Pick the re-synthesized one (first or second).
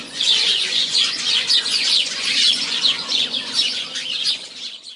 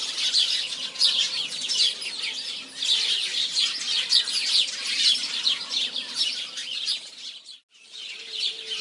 first